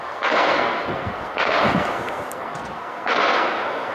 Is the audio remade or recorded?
remade